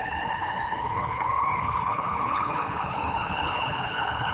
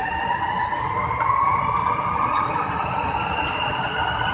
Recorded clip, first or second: second